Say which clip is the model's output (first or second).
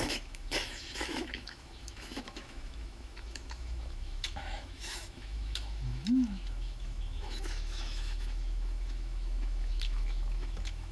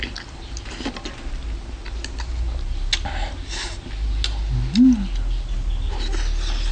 first